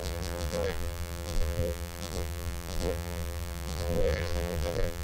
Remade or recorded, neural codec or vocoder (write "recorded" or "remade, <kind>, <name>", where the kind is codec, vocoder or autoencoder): remade, vocoder, BigVGAN v2